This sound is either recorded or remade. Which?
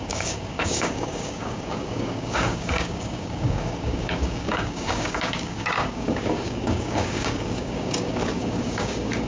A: remade